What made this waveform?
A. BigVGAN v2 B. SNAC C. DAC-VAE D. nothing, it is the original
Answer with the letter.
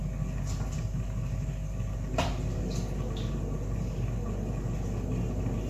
D